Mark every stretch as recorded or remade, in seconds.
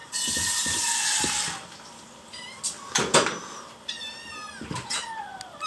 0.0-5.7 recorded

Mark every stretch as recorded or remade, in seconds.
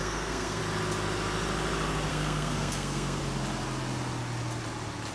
0.0-0.6 remade; 0.6-2.1 recorded; 2.1-3.2 remade; 3.2-5.1 recorded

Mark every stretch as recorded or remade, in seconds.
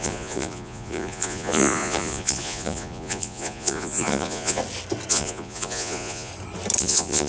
0.0-4.6 remade; 4.6-5.1 recorded; 5.1-6.3 remade; 6.3-6.8 recorded; 6.8-7.3 remade